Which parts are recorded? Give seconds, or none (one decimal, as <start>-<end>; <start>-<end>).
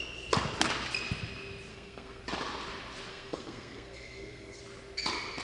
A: 0.0-1.7; 2.2-3.1; 4.6-5.4